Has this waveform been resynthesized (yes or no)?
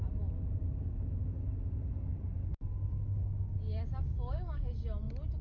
no